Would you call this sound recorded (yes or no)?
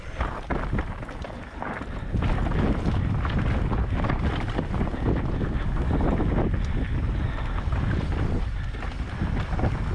yes